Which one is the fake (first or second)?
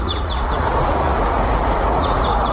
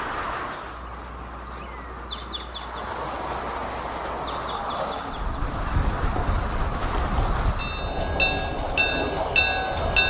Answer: first